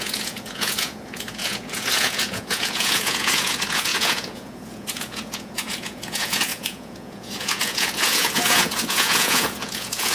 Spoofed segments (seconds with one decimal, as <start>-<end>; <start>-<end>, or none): 0.0-10.1

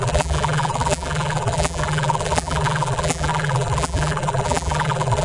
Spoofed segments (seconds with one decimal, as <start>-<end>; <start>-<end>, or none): 0.0-5.2

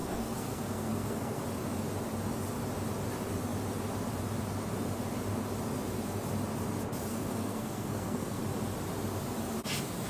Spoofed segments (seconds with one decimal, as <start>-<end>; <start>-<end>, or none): 0.0-1.4; 7.1-8.4

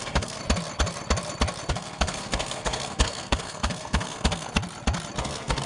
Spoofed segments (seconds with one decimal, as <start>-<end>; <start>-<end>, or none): 0.0-0.4; 1.7-4.5; 5.2-5.7

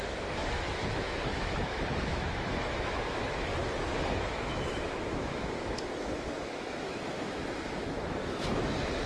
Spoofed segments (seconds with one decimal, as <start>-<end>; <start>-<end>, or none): 0.0-3.5; 4.1-9.1